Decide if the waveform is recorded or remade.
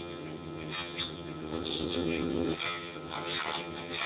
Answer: remade